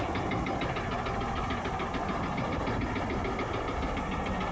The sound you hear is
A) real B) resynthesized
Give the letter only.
A